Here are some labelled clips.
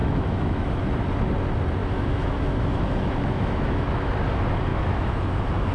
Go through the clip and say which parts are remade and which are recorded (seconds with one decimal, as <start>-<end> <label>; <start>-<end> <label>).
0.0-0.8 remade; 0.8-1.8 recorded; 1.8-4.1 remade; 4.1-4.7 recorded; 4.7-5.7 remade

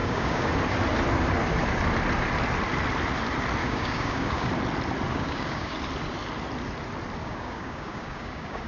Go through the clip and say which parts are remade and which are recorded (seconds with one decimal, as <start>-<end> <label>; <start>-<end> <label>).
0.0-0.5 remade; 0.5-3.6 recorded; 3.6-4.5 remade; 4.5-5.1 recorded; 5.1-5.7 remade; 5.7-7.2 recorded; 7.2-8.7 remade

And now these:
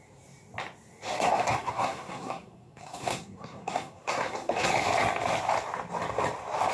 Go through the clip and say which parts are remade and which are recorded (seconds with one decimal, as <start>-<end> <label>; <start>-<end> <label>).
0.0-1.1 recorded; 1.1-4.7 remade; 4.7-6.7 recorded

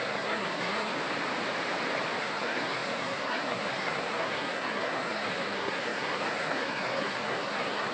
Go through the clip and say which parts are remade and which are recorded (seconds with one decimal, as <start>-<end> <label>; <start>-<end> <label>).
0.0-0.9 remade; 0.9-2.2 recorded; 2.2-7.9 remade